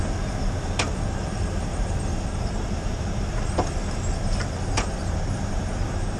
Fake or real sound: fake